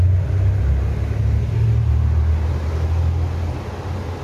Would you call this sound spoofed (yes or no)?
no